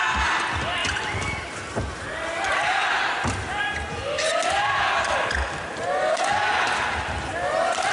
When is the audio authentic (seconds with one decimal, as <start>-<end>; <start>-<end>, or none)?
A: 0.0-0.8; 3.3-7.9